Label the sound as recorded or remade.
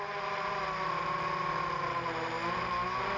recorded